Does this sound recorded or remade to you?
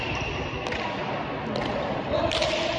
recorded